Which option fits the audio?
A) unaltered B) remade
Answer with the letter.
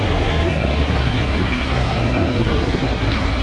B